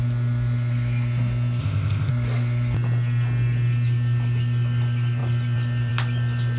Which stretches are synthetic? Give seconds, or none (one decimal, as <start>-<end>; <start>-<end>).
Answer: 1.6-2.1